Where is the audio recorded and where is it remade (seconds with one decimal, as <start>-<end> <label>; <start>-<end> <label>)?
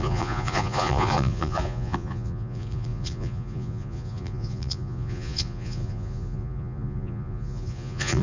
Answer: 0.0-8.2 remade